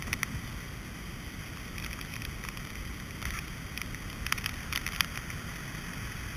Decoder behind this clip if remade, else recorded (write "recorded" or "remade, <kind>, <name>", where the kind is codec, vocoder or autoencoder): recorded